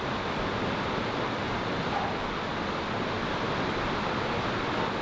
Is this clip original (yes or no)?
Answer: yes